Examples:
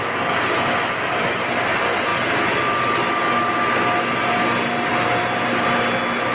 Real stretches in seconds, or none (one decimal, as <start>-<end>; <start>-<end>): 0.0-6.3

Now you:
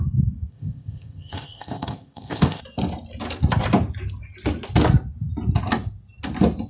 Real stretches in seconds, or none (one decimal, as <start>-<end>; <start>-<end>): 0.0-0.5; 2.6-6.7

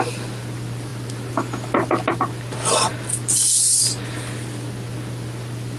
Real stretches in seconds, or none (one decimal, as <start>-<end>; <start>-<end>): 0.0-5.8

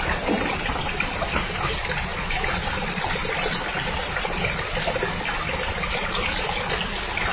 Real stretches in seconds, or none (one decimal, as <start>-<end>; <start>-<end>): 0.0-7.3

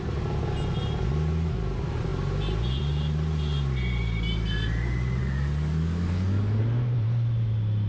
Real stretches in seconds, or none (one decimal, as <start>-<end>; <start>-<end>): 0.0-5.2; 6.6-7.9

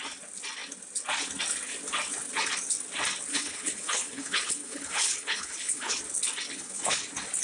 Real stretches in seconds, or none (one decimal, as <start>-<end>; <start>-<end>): 0.0-3.3; 6.0-6.5; 7.0-7.4

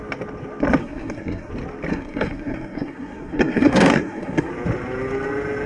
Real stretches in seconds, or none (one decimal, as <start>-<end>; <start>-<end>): 0.0-0.8; 1.5-1.9; 4.5-5.7